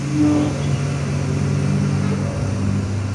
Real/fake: real